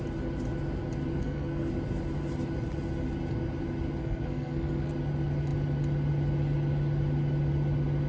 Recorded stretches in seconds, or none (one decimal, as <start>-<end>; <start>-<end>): 0.0-1.1; 1.7-4.0; 4.9-8.1